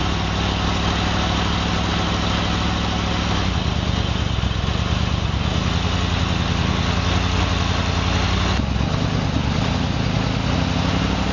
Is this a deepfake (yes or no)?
no